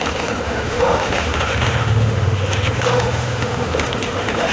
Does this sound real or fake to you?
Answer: fake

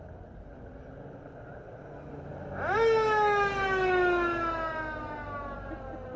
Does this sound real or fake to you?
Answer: real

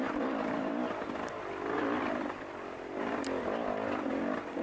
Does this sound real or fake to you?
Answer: real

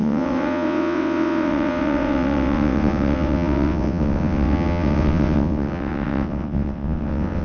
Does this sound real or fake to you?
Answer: fake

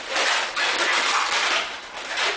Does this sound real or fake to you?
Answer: real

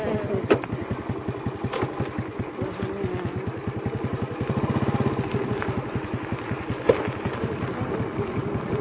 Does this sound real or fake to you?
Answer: real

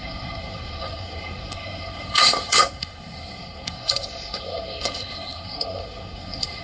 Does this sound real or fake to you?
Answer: fake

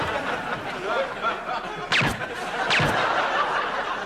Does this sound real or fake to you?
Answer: real